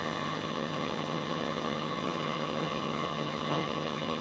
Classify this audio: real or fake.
fake